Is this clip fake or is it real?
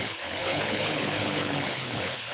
fake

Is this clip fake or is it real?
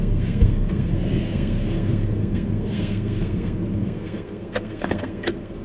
fake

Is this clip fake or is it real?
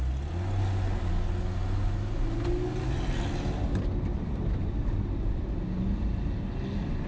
real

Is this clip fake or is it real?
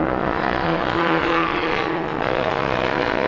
fake